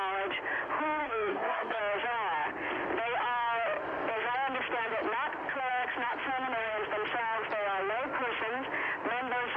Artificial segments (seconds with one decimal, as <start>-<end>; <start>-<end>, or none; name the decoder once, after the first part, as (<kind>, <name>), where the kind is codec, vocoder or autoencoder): 1.0-1.8 (codec, SNAC)